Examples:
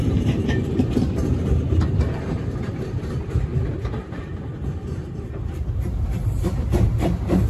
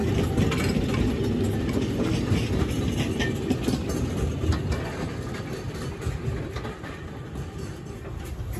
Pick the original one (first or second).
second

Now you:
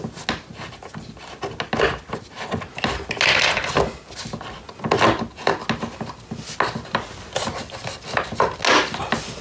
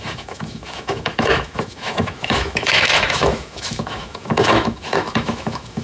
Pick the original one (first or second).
first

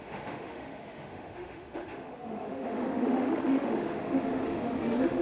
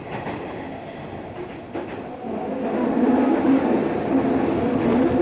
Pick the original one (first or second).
second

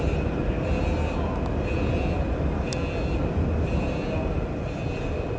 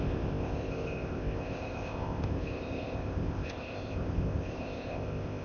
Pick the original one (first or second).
first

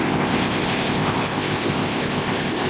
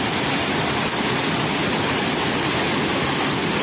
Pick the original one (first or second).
second